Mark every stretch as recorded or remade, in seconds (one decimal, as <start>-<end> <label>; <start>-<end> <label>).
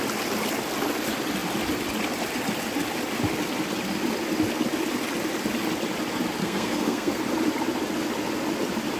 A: 0.0-6.4 recorded; 6.4-7.2 remade; 7.2-9.0 recorded